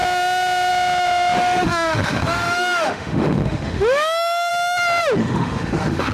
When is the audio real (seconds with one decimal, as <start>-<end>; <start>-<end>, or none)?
0.0-1.4; 4.5-5.2